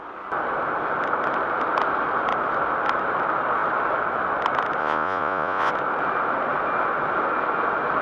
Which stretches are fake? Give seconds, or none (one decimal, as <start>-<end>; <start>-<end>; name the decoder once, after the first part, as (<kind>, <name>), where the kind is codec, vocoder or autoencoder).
4.8-5.7 (vocoder, Vocos)